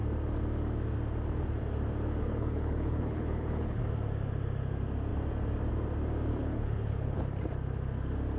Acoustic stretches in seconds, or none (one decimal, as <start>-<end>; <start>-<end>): 0.0-2.2; 3.8-6.3; 7.2-8.4